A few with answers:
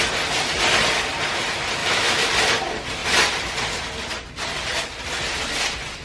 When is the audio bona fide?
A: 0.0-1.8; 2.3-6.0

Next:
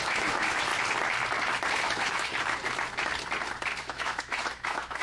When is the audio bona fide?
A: 0.7-1.7; 2.3-3.8

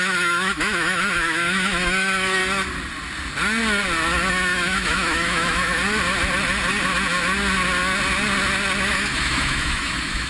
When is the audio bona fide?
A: 2.4-4.3; 5.8-8.8

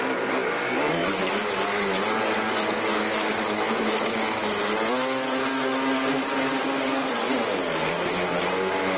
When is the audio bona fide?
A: 0.0-1.0; 2.0-2.9; 4.6-9.0

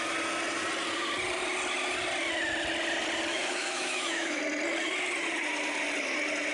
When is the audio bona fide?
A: 0.0-3.3; 4.4-6.5

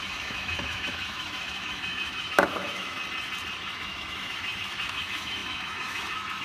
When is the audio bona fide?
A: 3.0-3.7

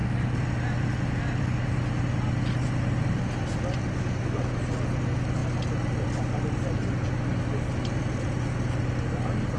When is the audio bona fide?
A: 0.0-9.6

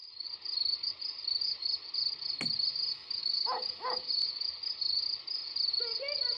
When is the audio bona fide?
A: 0.0-2.9; 4.1-6.4